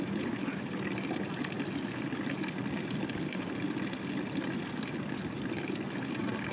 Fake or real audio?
real